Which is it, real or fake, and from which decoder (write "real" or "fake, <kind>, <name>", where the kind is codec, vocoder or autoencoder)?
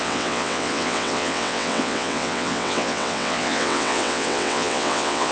fake, vocoder, WaveNeXt